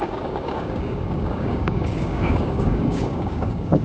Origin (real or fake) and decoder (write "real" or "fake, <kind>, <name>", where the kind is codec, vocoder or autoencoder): fake, codec, DAC